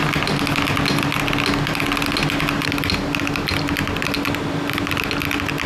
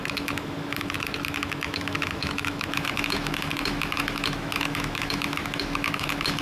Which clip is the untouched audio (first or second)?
first